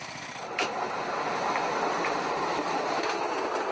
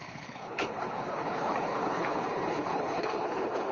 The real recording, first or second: first